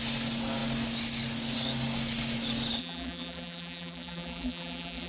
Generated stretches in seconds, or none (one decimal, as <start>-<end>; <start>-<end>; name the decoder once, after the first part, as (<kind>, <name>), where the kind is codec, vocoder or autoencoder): 2.8-5.1 (vocoder, BigVGAN v2)

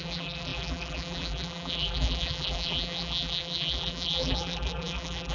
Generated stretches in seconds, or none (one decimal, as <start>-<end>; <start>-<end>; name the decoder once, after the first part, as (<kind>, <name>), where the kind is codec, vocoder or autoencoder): 0.0-5.3 (vocoder, BigVGAN v2)

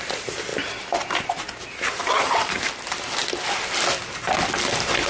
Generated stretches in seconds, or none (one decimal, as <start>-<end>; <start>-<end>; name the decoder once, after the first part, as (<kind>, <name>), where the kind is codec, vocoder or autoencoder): none